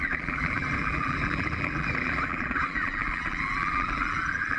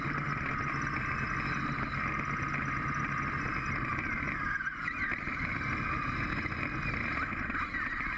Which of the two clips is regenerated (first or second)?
first